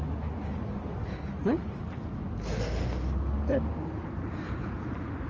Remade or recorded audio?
recorded